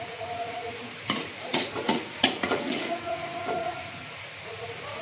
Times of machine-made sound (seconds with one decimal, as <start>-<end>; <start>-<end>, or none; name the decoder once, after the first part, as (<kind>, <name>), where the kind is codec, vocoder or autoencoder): 0.0-5.0 (vocoder, Vocos)